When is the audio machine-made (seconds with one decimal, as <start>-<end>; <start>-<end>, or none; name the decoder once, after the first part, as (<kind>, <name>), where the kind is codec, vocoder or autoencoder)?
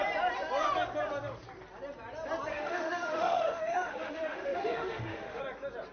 2.5-5.4 (autoencoder, DAC-VAE)